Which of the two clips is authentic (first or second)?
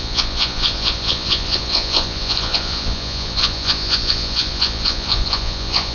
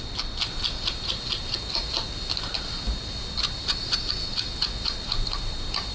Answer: second